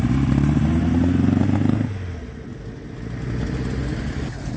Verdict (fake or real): real